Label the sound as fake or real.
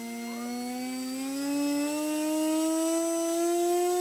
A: real